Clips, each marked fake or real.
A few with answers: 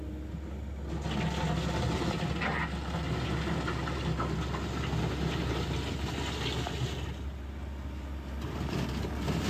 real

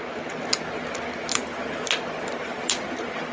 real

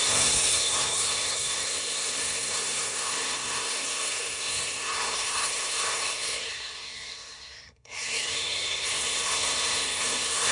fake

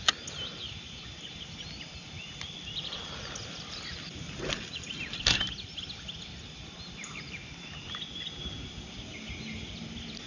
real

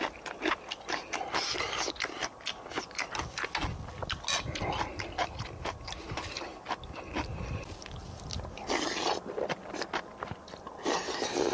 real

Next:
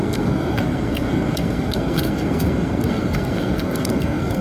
fake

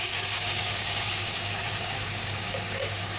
fake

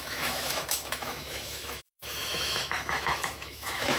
fake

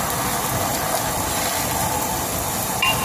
real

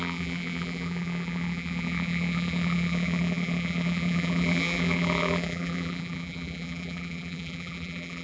fake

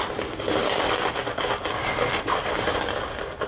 real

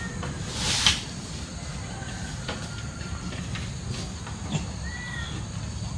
real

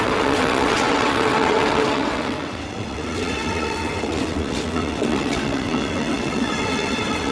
fake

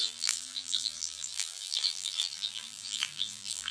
fake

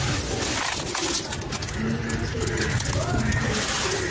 real